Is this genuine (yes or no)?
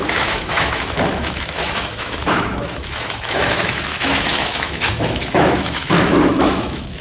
no